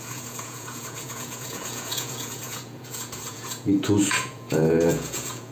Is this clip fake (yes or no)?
yes